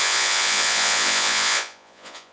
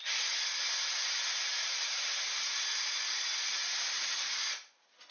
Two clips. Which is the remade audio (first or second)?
first